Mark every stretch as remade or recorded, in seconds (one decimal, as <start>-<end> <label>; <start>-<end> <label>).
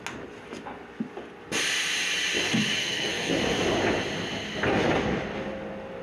0.0-2.8 recorded; 2.8-3.3 remade; 3.3-6.0 recorded